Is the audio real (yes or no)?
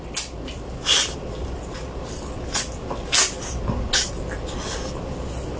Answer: yes